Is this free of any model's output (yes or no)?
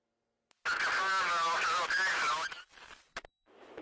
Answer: yes